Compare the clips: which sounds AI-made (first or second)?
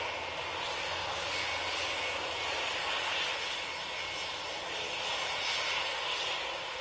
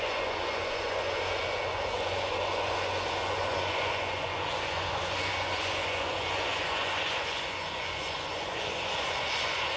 second